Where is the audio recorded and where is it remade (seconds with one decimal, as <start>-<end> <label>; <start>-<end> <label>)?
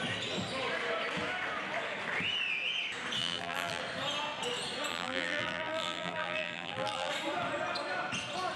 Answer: 0.0-3.2 recorded; 3.2-3.8 remade; 3.8-4.9 recorded; 4.9-7.1 remade; 7.1-8.6 recorded